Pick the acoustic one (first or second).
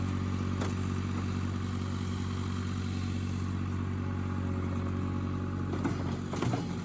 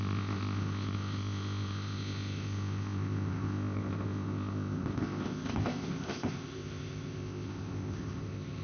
first